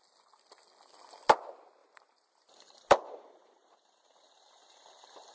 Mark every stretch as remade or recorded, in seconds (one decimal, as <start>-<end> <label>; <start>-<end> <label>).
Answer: 0.0-1.8 recorded; 1.8-5.3 remade